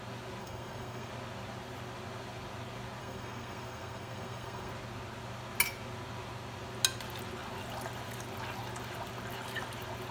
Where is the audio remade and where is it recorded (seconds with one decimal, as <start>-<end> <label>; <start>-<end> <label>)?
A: 0.0-0.4 recorded; 0.4-1.1 remade; 1.1-3.0 recorded; 3.0-4.7 remade; 4.7-10.1 recorded